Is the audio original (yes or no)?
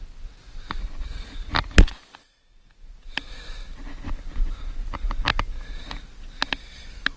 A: yes